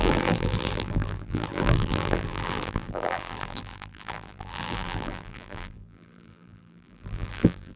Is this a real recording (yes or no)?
no